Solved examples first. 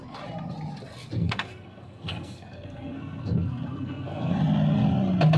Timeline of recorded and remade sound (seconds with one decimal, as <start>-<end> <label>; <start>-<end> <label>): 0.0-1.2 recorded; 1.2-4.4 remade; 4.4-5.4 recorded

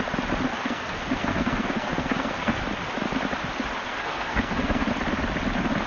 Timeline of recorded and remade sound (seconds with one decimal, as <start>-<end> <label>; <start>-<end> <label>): 0.0-0.5 recorded; 0.5-2.6 remade; 2.6-3.8 recorded; 3.8-4.9 remade; 4.9-5.9 recorded

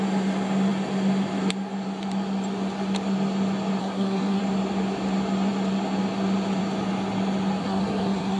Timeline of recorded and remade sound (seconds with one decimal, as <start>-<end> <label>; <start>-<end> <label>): 0.0-3.8 recorded; 3.8-4.4 remade; 4.4-7.6 recorded; 7.6-8.4 remade